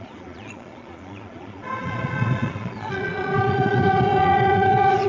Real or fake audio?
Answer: fake